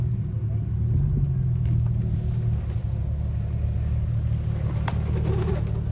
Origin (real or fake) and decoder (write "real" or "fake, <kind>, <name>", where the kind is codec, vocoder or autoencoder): real